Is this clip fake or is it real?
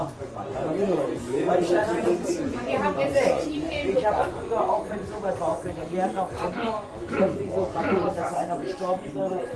fake